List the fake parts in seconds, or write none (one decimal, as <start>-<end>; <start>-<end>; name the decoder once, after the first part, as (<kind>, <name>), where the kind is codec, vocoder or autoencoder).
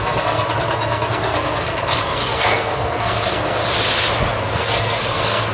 0.0-3.6 (codec, SNAC); 4.3-5.5